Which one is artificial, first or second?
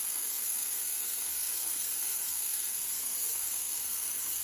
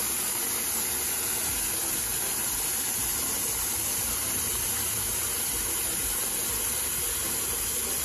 first